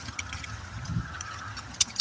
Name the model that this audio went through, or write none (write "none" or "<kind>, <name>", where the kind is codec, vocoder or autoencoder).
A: vocoder, HiFi-GAN